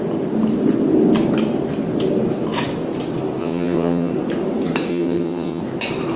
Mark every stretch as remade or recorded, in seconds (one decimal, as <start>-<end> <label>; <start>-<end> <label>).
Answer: 0.0-3.4 recorded; 3.4-4.1 remade; 4.1-4.9 recorded; 4.9-5.6 remade; 5.6-6.2 recorded